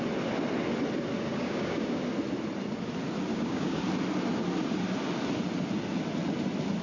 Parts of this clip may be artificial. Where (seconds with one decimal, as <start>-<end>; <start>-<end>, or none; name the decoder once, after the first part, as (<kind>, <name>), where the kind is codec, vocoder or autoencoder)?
1.3-2.0 (codec, DAC); 3.3-3.8

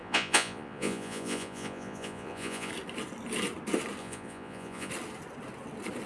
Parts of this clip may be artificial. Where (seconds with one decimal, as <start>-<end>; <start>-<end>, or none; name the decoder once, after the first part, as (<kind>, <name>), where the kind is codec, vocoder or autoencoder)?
0.0-2.7 (vocoder, Vocos); 4.0-4.9

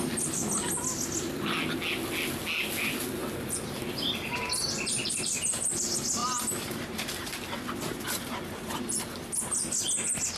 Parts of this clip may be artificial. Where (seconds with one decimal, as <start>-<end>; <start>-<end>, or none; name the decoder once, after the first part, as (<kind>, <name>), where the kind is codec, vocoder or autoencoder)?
3.2-5.8 (vocoder, BigVGAN v2); 6.2-9.0

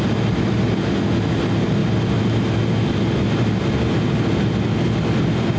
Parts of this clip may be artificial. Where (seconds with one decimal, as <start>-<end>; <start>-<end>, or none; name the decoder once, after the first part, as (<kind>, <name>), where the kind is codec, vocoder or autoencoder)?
none

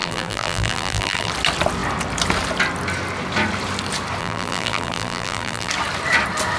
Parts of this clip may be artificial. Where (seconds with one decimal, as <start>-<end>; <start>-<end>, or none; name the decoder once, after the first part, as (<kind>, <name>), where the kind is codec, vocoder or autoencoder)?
0.0-1.3 (vocoder, BigVGAN v2); 4.2-5.7

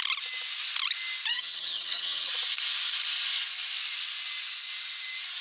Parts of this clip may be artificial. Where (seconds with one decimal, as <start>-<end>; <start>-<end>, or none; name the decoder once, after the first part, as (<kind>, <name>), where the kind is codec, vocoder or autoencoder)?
1.3-2.3 (vocoder, HiFi-GAN)